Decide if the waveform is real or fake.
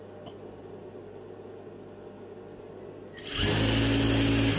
real